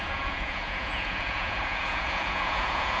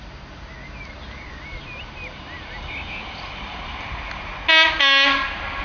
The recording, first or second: second